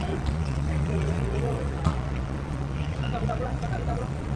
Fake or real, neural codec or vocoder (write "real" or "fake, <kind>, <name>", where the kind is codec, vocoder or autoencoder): fake, vocoder, Vocos